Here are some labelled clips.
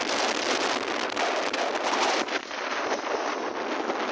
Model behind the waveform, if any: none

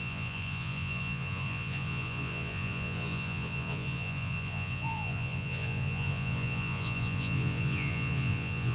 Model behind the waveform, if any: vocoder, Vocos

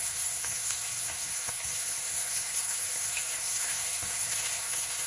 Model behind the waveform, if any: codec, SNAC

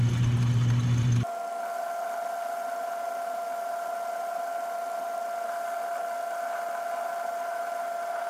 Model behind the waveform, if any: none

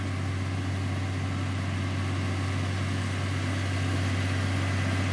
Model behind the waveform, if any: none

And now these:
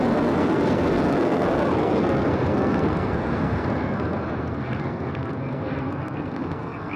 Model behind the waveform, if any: codec, SNAC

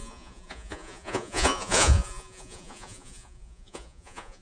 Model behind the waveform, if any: vocoder, Vocos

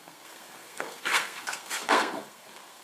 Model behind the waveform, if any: codec, SNAC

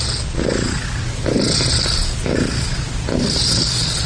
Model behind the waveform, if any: none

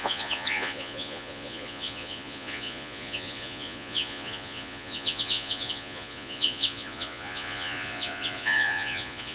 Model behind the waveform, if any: vocoder, Vocos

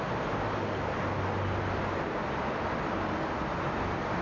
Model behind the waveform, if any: none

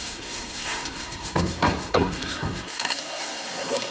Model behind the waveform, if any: codec, SNAC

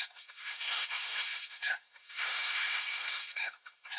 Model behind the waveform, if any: codec, SNAC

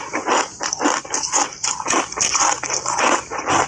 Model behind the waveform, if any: none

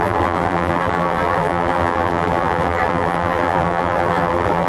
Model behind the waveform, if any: vocoder, BigVGAN v2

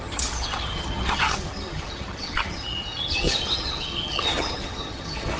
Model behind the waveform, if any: vocoder, HiFi-GAN